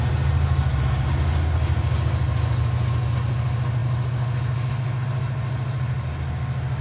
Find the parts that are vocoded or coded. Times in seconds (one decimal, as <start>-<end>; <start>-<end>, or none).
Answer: none